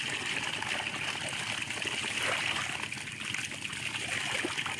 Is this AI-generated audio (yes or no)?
no